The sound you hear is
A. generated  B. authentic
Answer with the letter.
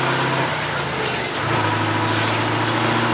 B